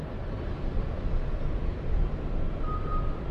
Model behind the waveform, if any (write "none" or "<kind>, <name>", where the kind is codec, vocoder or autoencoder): none